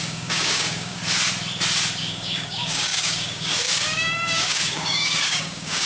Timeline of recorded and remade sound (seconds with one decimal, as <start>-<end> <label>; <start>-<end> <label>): 0.0-1.0 remade; 1.0-2.0 recorded; 2.0-5.9 remade